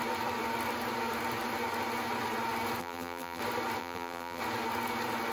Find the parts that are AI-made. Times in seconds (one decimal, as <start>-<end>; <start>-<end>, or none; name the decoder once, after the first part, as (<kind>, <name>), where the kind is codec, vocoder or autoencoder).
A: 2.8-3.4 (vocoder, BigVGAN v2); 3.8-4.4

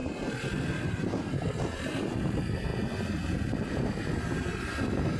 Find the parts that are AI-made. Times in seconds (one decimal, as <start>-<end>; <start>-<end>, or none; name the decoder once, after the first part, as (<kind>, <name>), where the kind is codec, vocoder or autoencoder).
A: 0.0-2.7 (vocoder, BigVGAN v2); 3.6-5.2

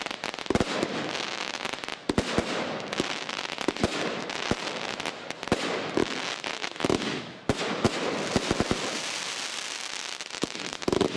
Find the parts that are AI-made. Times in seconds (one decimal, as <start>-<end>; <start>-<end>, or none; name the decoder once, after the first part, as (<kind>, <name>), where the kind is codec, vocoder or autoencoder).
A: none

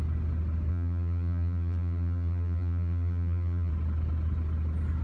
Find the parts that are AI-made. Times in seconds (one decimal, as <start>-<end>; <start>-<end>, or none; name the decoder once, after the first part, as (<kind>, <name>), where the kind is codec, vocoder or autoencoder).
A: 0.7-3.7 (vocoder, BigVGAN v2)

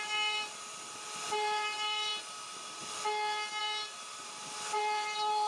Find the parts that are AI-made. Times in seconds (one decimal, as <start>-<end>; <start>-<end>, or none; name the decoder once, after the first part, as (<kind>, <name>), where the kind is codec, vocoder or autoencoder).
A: 0.0-2.1 (vocoder, BigVGAN v2); 3.6-5.5